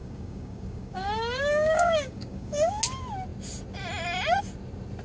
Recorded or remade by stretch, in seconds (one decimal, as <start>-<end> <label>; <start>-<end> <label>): 0.0-2.8 remade; 2.8-5.0 recorded